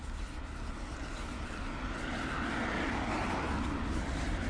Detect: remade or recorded recorded